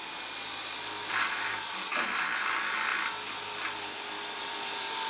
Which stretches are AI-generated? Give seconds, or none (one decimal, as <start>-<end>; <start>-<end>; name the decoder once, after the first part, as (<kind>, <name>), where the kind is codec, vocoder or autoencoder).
none